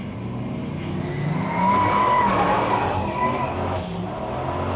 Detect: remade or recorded recorded